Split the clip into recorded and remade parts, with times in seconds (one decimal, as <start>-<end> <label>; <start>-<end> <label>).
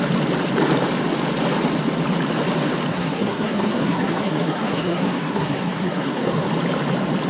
0.0-2.9 recorded; 2.9-6.5 remade; 6.5-7.3 recorded